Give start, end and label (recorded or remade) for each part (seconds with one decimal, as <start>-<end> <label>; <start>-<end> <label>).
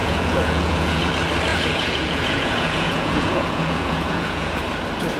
0.0-1.1 remade; 1.1-1.5 recorded; 1.5-4.6 remade; 4.6-5.2 recorded